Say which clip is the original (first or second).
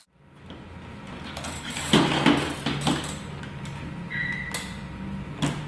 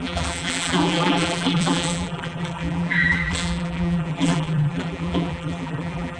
first